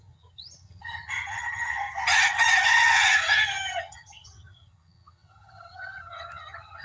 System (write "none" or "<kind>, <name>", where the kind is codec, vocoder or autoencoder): vocoder, HiFi-GAN